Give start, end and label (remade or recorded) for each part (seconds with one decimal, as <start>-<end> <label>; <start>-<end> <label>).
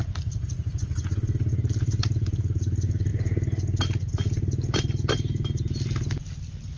0.0-1.5 recorded; 1.5-2.1 remade; 2.1-6.8 recorded